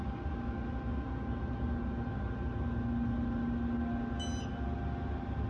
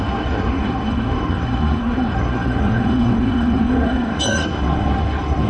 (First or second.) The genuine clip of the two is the first